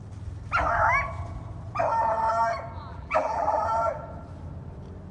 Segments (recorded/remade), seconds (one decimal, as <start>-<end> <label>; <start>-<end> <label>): 0.0-2.9 recorded; 2.9-3.6 remade; 3.6-5.1 recorded